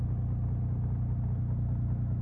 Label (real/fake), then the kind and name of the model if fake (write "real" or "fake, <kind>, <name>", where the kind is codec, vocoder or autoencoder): real